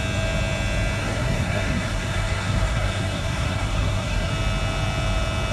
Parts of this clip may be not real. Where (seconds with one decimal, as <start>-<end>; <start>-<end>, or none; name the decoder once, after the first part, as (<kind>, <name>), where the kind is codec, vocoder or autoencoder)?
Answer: 1.0-4.3 (codec, SNAC)